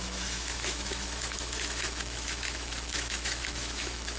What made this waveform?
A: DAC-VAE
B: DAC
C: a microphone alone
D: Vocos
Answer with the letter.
A